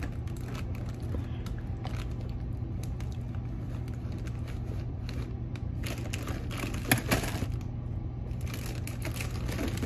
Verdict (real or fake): real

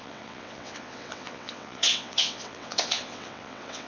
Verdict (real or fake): fake